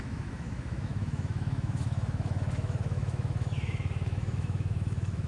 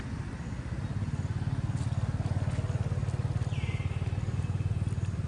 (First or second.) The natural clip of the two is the second